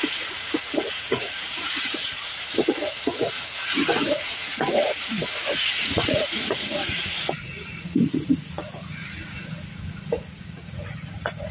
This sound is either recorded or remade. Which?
remade